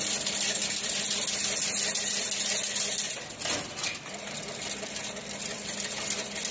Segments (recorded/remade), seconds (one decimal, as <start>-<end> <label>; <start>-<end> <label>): 0.0-6.5 recorded